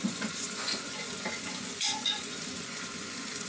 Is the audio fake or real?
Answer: fake